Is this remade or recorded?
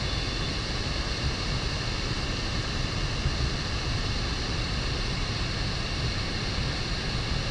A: recorded